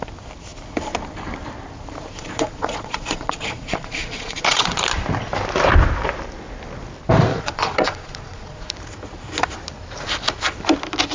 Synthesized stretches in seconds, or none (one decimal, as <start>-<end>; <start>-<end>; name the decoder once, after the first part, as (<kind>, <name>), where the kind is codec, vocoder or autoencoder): 2.2-4.8 (vocoder, Vocos); 7.3-8.7